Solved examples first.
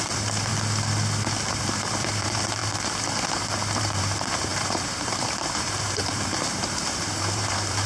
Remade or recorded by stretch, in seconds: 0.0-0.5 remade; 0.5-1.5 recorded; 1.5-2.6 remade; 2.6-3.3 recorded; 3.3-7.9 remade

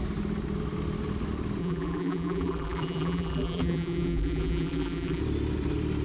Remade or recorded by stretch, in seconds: 0.0-1.6 recorded; 1.6-5.2 remade; 5.2-6.0 recorded

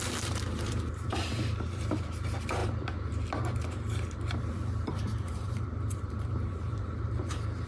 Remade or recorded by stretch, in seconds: 0.0-7.7 remade